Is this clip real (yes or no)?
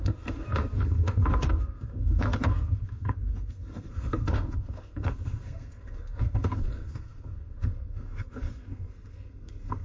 no